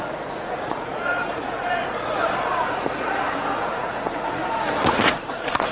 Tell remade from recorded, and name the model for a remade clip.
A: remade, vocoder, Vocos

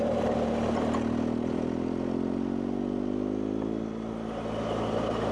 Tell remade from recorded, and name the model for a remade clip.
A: recorded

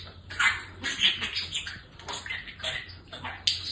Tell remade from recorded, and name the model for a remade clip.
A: recorded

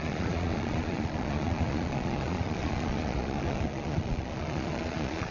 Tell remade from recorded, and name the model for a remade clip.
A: remade, vocoder, Vocos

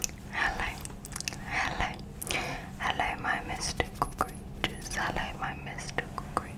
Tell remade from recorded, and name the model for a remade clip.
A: recorded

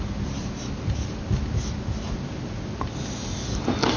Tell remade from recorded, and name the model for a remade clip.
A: recorded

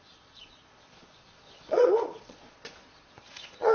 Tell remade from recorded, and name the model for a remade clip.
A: remade, vocoder, Vocos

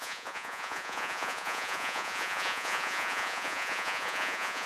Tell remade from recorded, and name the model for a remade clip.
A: remade, vocoder, Vocos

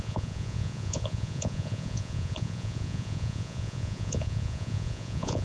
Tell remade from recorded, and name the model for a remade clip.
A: remade, vocoder, Vocos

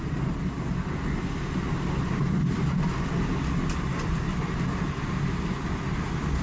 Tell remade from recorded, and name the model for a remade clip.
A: recorded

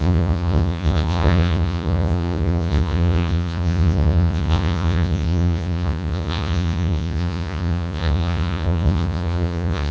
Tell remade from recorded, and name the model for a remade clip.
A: remade, vocoder, Vocos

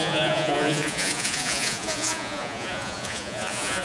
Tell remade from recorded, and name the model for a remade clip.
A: remade, vocoder, Vocos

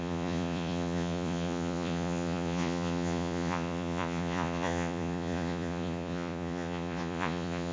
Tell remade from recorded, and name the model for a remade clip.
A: remade, vocoder, Vocos